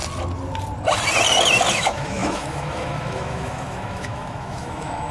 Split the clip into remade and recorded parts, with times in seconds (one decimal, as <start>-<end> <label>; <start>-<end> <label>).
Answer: 0.0-1.7 recorded; 1.7-5.1 remade